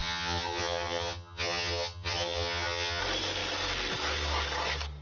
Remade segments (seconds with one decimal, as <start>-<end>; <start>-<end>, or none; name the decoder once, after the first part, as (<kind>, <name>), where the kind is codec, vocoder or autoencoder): 0.0-3.0 (vocoder, HiFi-GAN)